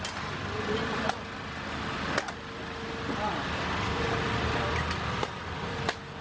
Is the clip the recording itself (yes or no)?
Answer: yes